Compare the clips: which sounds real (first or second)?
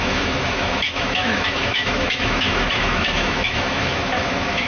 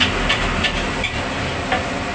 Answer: second